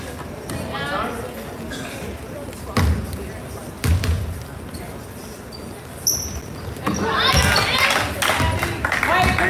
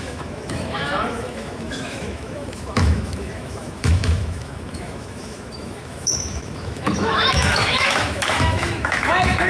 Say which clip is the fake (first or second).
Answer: second